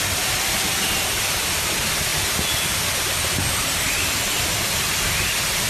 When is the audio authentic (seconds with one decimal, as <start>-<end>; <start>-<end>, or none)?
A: 0.0-5.7